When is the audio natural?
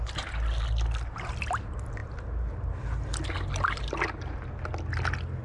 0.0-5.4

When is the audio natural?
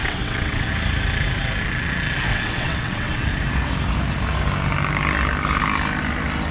0.7-2.3; 3.3-6.5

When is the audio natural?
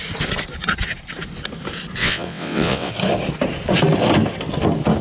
0.0-2.0; 2.9-5.0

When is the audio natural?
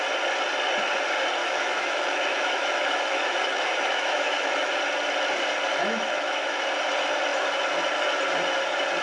0.0-1.4; 4.7-5.7; 6.6-9.0